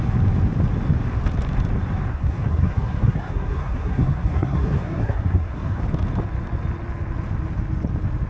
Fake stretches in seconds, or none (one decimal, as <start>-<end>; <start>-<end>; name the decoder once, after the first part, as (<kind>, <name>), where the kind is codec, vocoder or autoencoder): 2.1-5.8 (codec, SNAC)